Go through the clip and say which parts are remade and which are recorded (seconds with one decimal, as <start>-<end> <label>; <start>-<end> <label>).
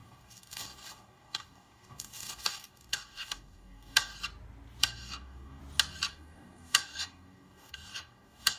0.0-4.1 remade; 4.1-4.8 recorded; 4.8-5.6 remade; 5.6-6.1 recorded; 6.1-8.6 remade